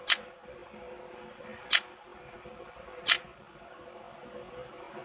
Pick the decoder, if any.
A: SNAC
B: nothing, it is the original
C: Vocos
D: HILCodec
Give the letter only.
B